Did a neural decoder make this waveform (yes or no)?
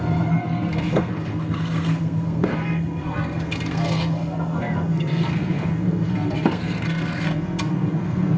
yes